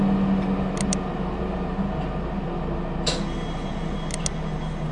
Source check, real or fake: real